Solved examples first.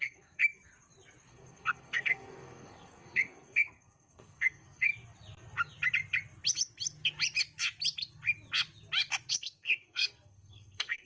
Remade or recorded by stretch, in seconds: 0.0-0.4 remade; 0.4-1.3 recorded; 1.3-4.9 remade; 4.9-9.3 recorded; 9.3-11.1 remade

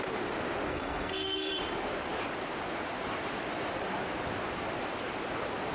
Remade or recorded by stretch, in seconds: 0.0-0.7 recorded; 0.7-1.5 remade; 1.5-5.7 recorded

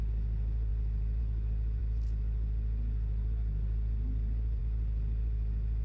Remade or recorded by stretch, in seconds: 0.0-5.8 recorded

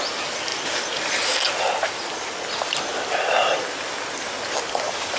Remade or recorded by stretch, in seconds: 0.0-5.2 recorded

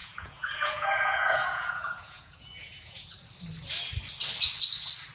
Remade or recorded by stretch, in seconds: 0.0-3.1 remade; 3.1-5.1 recorded

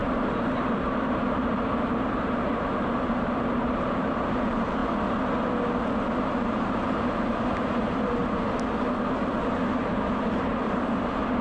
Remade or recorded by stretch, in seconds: 0.0-4.8 remade; 4.8-6.2 recorded; 6.2-8.2 remade; 8.2-9.2 recorded; 9.2-11.4 remade

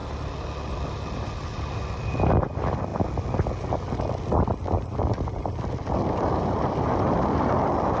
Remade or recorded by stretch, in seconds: 0.0-8.0 recorded

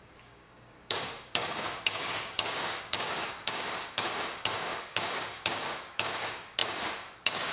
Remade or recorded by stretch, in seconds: 0.0-7.5 remade